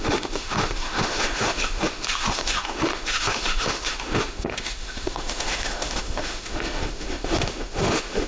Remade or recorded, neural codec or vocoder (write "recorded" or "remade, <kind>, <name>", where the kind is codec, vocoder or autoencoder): remade, autoencoder, DAC-VAE